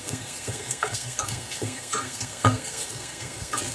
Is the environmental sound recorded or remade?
remade